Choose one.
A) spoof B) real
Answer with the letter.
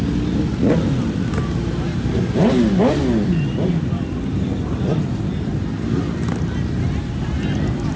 B